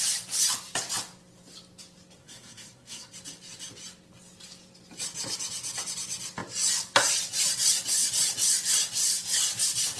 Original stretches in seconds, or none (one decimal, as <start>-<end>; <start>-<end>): 0.0-2.2; 3.1-10.0